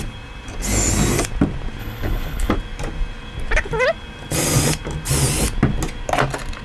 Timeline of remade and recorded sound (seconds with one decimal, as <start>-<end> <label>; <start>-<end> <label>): 0.0-1.8 recorded; 1.8-2.5 remade; 2.5-6.6 recorded